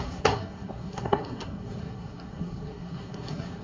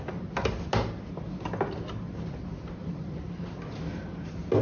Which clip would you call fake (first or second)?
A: first